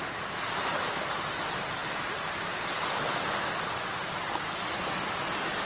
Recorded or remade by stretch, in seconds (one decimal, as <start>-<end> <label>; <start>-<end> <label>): 0.0-5.7 recorded